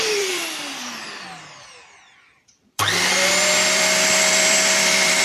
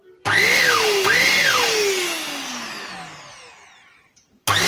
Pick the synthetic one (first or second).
first